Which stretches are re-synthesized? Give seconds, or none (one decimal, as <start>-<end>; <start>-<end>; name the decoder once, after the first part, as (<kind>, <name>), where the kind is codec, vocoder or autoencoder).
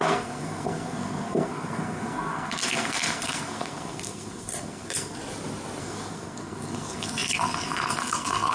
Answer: 0.0-5.2 (codec, SNAC); 5.8-8.5